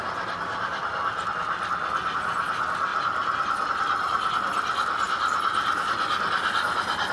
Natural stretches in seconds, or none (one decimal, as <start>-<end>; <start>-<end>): 0.0-2.9; 3.7-7.1